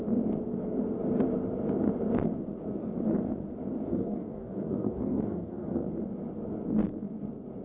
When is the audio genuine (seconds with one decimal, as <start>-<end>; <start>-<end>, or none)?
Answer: 0.0-3.9; 5.9-7.6